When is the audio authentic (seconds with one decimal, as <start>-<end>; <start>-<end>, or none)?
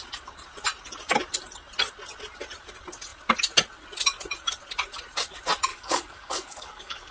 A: 0.0-5.7